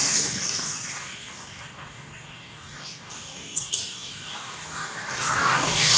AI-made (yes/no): yes